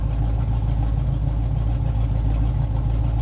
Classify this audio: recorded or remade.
recorded